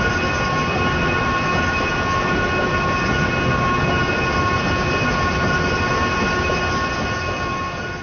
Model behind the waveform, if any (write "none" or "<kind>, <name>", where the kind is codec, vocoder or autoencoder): none